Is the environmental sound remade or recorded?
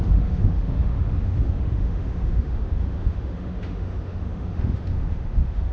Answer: remade